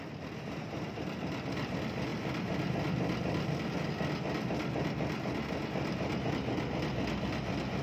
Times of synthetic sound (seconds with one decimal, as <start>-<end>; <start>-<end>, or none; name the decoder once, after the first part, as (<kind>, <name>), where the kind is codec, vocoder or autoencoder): none